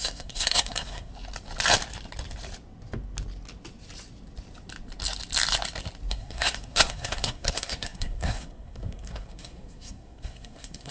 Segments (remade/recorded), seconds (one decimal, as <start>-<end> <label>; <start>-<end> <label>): 0.0-1.1 remade; 1.1-6.1 recorded; 6.1-10.9 remade